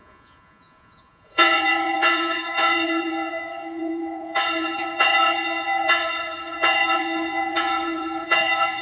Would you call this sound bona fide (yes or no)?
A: no